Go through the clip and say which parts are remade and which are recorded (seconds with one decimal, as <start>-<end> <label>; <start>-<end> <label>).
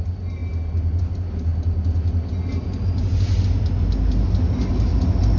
0.0-5.4 recorded